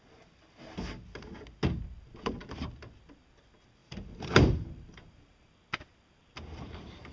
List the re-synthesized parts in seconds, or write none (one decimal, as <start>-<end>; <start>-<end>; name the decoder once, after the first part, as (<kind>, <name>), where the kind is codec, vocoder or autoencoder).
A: 3.8-5.5 (vocoder, BigVGAN v2)